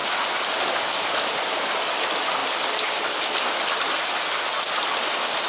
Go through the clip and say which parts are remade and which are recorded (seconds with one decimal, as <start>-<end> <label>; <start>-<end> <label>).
0.0-5.5 recorded